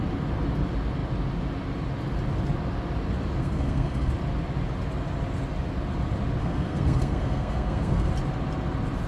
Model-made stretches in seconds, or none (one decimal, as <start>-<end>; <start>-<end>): 3.4-4.1; 6.4-8.1